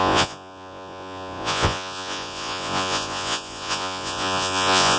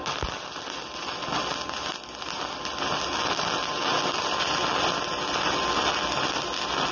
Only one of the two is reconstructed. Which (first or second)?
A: first